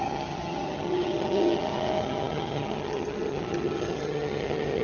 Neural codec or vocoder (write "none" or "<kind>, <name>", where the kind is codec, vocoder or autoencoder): vocoder, HiFi-GAN